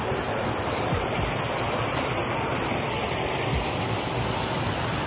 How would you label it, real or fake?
fake